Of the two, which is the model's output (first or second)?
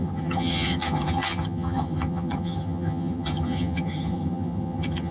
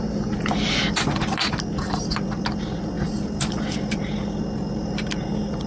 first